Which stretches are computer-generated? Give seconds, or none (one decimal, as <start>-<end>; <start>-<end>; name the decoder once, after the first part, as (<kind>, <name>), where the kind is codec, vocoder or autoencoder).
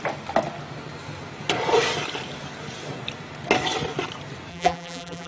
4.5-5.3 (vocoder, BigVGAN v2)